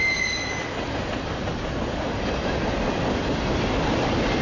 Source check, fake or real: real